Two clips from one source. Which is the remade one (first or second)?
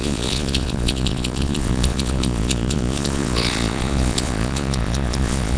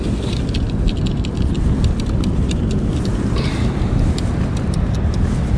first